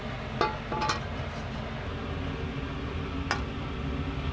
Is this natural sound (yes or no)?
yes